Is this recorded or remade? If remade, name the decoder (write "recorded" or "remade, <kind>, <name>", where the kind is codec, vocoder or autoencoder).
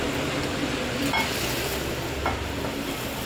recorded